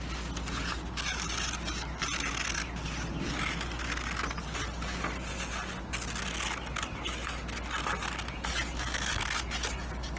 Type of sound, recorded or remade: recorded